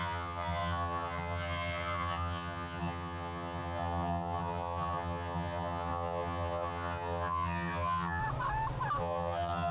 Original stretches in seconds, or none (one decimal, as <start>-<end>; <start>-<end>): 8.2-9.0